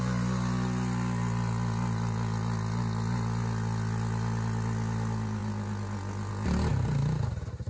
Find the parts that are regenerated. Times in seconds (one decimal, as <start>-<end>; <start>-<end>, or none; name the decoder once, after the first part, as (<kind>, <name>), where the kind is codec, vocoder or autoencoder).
none